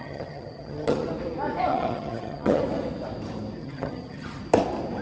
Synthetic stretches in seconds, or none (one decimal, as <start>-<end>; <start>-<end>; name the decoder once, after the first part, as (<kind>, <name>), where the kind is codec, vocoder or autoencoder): 0.0-1.1 (vocoder, HiFi-GAN); 1.7-2.6; 3.6-4.4